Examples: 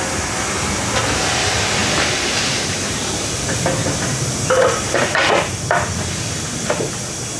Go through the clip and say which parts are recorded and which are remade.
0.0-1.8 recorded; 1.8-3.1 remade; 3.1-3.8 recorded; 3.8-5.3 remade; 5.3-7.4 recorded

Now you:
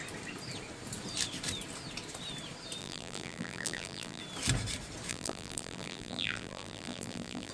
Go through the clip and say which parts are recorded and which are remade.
0.0-2.8 recorded; 2.8-4.2 remade; 4.2-5.1 recorded; 5.1-7.5 remade

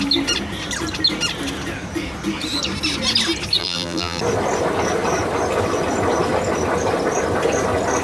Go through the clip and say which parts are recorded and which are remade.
0.0-3.6 recorded; 3.6-4.2 remade; 4.2-8.0 recorded